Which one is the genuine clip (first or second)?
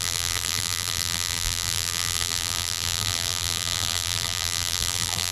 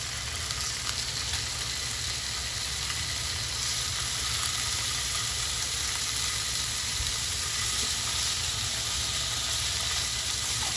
second